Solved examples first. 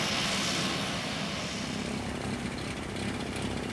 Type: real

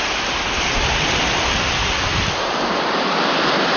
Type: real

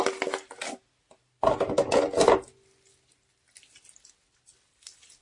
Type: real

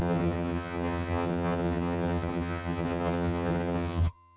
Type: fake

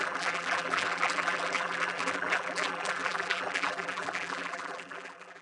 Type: fake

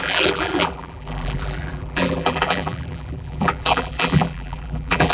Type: fake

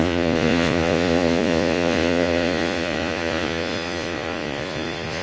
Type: fake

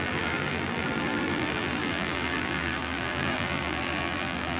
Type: fake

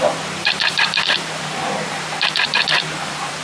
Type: fake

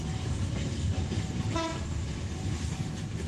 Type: real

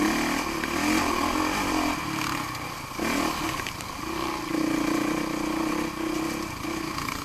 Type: real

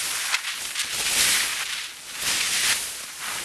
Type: real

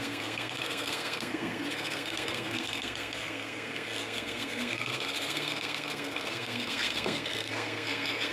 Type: fake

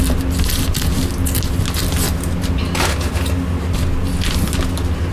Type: real